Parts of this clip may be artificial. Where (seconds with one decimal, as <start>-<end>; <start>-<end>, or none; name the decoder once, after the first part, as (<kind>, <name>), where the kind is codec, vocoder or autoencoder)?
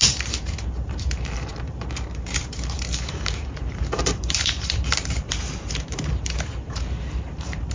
0.0-7.7 (vocoder, BigVGAN v2)